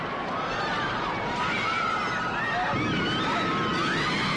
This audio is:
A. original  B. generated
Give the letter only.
A